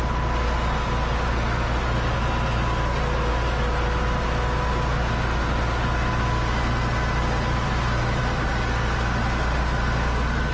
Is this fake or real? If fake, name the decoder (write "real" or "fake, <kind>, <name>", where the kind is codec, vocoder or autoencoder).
real